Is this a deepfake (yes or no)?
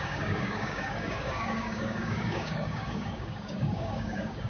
yes